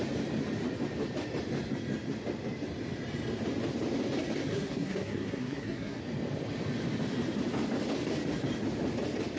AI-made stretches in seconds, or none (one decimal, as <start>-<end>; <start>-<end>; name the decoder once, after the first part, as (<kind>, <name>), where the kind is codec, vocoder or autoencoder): 4.5-6.0 (codec, SNAC)